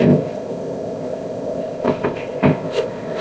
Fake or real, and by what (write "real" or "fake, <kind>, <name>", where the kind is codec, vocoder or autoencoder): fake, codec, ZipCodec